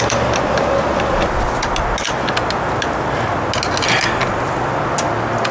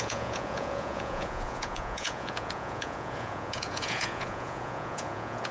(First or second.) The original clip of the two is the first